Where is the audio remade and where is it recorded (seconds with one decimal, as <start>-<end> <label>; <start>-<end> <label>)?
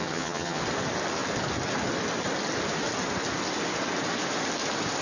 0.0-0.6 remade; 0.6-5.0 recorded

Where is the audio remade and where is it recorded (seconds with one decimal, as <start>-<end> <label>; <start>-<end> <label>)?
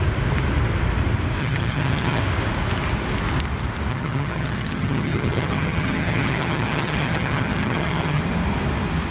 0.0-1.4 recorded; 1.4-2.2 remade; 2.2-3.9 recorded; 3.9-8.2 remade; 8.2-9.1 recorded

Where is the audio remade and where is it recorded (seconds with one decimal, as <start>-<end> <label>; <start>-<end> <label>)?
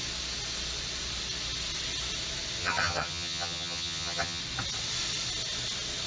0.0-2.6 recorded; 2.6-4.4 remade; 4.4-6.1 recorded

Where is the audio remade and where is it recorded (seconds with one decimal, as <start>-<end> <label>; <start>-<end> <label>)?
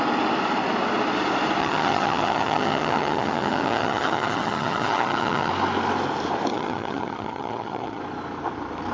0.0-1.6 recorded; 1.6-5.5 remade; 5.5-6.5 recorded; 6.5-8.0 remade; 8.0-8.9 recorded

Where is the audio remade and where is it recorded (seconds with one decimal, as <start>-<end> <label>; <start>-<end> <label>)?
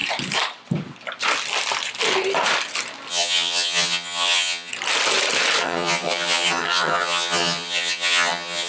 0.0-3.1 recorded; 3.1-4.7 remade; 4.7-5.6 recorded; 5.6-8.7 remade